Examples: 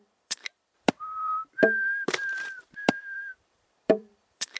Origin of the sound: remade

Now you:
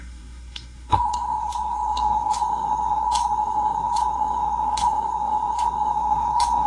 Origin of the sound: remade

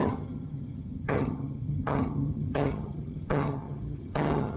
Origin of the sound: remade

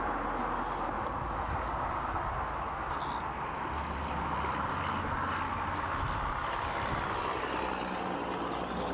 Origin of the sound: recorded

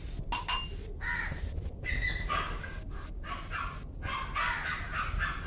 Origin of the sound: recorded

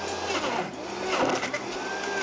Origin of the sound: recorded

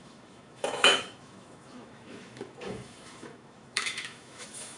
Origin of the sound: remade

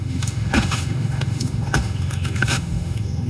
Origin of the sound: remade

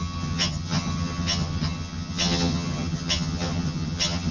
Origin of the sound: remade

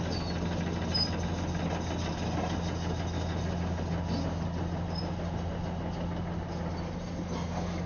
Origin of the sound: recorded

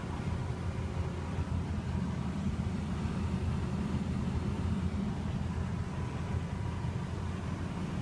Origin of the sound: recorded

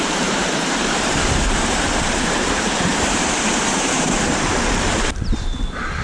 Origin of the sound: remade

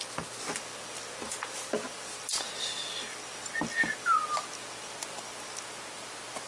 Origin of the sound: recorded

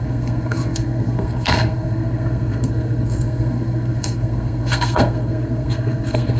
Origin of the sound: remade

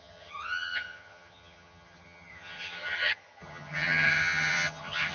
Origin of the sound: remade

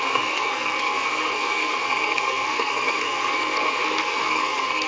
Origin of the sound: remade